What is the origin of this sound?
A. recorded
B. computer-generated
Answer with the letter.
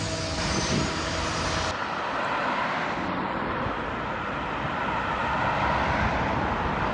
A